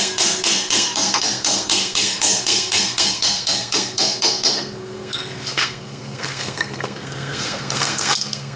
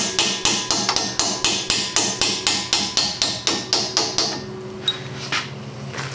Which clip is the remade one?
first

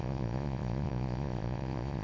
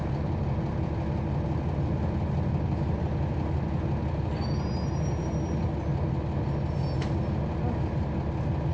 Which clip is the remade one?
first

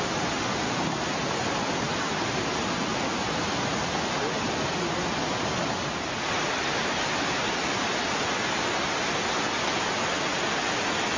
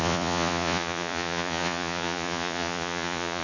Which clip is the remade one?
second